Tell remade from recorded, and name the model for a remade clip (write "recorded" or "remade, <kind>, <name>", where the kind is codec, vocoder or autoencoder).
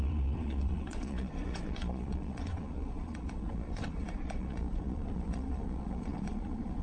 remade, vocoder, Vocos